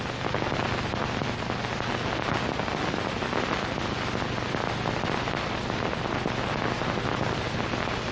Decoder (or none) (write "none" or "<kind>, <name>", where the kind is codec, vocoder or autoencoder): none